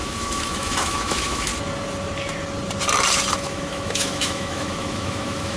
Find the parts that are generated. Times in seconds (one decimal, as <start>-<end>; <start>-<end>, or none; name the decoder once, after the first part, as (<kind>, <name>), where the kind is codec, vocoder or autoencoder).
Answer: 0.0-1.5 (autoencoder, DAC-VAE); 3.3-5.6